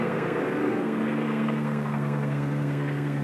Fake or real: fake